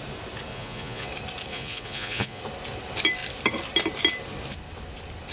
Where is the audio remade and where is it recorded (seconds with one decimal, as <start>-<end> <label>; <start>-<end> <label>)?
0.0-0.5 recorded; 0.5-1.1 remade; 1.1-1.5 recorded; 1.5-2.4 remade; 2.4-5.3 recorded